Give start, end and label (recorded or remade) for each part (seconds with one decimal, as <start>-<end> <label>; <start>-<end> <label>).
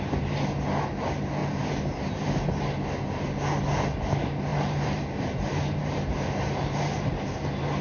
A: 0.0-1.4 recorded; 1.4-2.6 remade; 2.6-4.5 recorded; 4.5-7.2 remade; 7.2-7.8 recorded